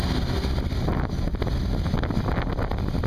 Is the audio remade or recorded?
recorded